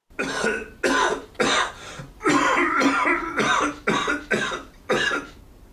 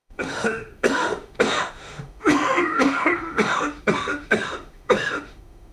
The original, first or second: first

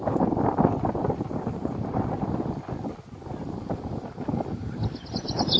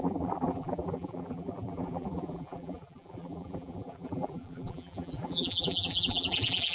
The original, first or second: first